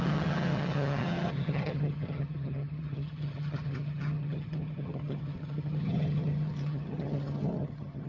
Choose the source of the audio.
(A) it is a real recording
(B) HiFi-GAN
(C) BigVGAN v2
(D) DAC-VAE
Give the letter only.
B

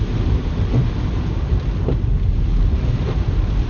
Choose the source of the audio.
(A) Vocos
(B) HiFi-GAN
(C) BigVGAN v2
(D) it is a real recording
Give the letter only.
D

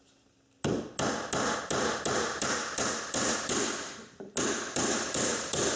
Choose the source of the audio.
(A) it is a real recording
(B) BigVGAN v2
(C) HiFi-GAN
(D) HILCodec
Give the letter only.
A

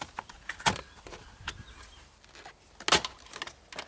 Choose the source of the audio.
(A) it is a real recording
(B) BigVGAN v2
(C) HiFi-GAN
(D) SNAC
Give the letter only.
A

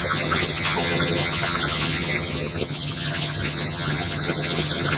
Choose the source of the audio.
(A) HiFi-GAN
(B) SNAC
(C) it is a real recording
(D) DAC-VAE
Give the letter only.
A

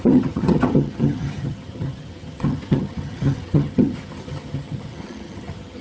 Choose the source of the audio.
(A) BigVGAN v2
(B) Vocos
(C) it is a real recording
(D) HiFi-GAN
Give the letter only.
D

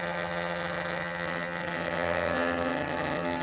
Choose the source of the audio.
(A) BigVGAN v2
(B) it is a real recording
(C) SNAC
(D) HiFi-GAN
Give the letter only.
D